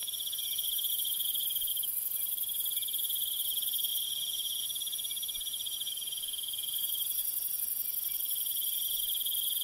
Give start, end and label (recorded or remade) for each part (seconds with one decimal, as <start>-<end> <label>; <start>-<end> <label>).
0.0-7.2 remade; 7.2-9.6 recorded